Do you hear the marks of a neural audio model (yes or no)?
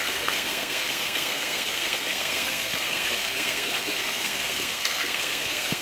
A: yes